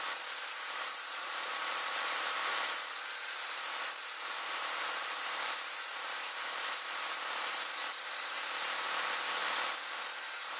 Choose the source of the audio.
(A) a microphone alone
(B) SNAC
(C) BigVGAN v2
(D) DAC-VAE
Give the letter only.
C